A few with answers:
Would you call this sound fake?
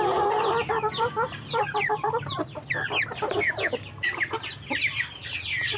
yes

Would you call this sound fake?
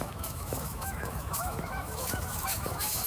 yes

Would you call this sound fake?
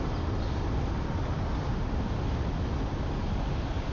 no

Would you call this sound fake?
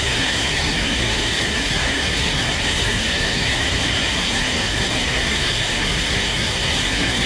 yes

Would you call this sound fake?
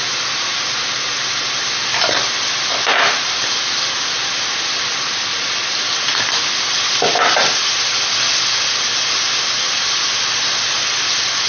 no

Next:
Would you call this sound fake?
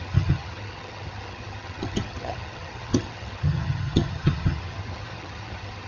yes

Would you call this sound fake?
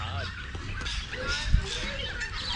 no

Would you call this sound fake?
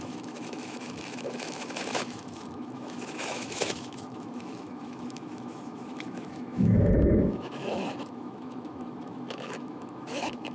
yes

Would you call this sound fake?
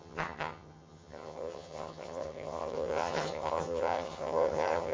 yes